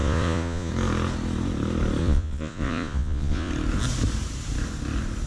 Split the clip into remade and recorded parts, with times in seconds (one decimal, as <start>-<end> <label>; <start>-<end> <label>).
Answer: 0.0-0.7 remade; 0.7-2.0 recorded; 2.0-3.5 remade; 3.5-5.3 recorded